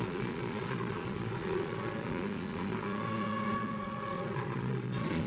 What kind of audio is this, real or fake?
fake